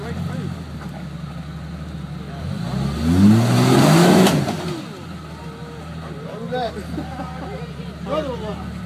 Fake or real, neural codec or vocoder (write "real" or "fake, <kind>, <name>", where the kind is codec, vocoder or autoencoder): real